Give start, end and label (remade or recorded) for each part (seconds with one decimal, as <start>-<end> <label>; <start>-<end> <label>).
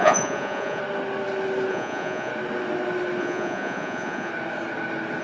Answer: 0.0-0.8 remade; 0.8-1.7 recorded; 1.7-2.3 remade; 2.3-3.2 recorded; 3.2-4.3 remade; 4.3-5.2 recorded